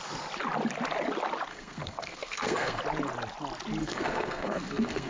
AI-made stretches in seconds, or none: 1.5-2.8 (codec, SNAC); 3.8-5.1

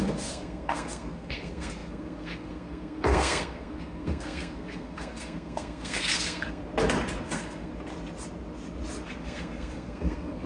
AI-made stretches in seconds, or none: 0.0-6.6 (codec, SNAC); 7.2-7.7; 9.2-10.5

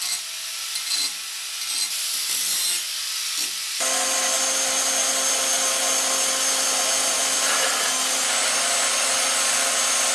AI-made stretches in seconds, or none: none

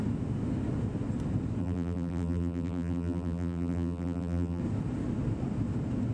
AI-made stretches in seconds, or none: 1.6-4.6 (vocoder, BigVGAN v2)

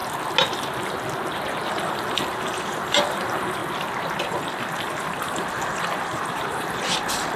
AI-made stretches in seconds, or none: 1.7-3.6 (vocoder, BigVGAN v2); 4.2-7.4

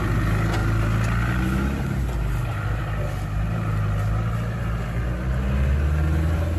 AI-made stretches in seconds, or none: none

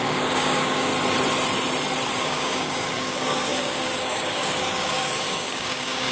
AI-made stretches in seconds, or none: 0.0-0.9 (codec, DAC); 2.2-6.1